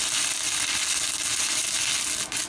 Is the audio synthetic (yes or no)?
no